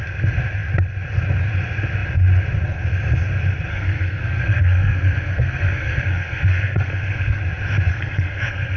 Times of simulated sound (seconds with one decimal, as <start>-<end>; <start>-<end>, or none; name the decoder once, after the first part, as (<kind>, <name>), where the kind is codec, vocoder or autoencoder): 3.7-7.4 (codec, SNAC); 7.9-8.8